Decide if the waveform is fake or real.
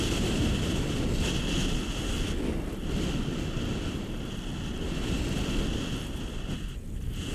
real